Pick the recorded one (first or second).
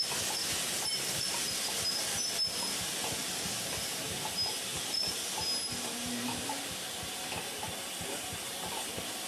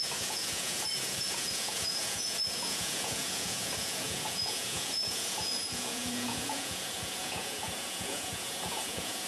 first